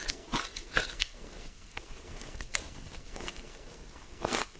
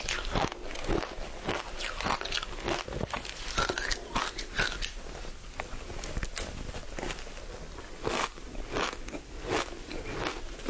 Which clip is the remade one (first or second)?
first